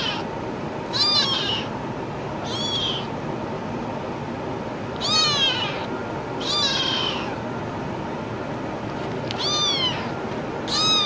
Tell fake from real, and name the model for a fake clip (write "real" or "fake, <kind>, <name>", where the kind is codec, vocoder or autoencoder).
real